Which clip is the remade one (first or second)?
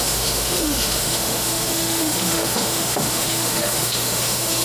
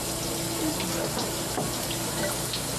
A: first